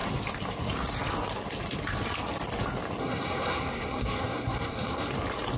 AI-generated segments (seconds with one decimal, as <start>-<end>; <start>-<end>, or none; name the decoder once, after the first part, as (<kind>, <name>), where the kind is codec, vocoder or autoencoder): 3.0-5.1 (codec, SNAC)